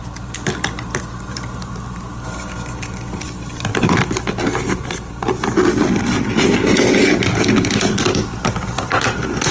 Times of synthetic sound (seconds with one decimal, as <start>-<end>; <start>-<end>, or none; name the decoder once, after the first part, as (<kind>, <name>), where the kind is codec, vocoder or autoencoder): 0.0-9.5 (vocoder, BigVGAN v2)

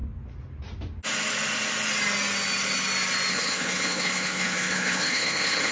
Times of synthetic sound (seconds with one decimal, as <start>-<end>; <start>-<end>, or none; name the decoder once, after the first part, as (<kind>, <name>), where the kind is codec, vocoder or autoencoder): 3.3-5.7 (codec, HILCodec)

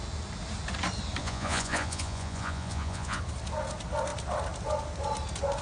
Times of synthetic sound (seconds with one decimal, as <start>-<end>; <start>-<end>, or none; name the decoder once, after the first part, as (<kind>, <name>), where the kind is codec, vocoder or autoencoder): 1.2-3.2 (vocoder, Vocos)

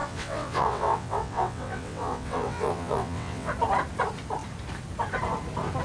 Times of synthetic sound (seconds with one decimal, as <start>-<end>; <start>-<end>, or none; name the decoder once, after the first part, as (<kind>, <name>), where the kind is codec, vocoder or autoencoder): 0.0-3.5 (vocoder, WaveNeXt)

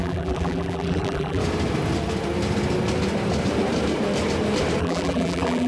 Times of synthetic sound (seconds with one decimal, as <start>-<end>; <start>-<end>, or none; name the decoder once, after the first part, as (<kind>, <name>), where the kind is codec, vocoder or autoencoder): 0.0-1.4 (vocoder, BigVGAN v2); 4.8-5.7

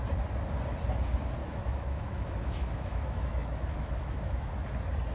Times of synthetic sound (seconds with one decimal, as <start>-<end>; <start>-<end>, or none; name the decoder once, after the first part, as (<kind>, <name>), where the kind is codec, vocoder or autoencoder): 1.4-4.5 (autoencoder, DAC-VAE)

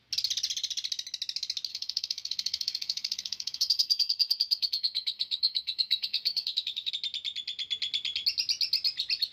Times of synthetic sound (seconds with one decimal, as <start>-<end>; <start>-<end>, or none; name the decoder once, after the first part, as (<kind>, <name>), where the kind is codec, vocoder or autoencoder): 1.7-6.9 (codec, SNAC)